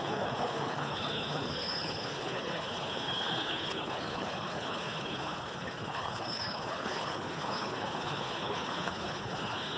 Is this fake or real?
fake